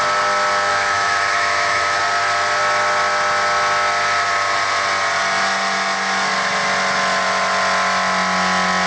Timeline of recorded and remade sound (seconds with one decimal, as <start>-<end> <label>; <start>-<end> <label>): 0.0-0.7 recorded; 0.7-2.0 remade; 2.0-8.9 recorded